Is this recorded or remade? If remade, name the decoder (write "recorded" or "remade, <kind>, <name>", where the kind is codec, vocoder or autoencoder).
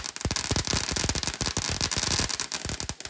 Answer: recorded